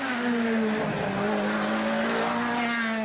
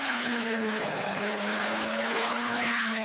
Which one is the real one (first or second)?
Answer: first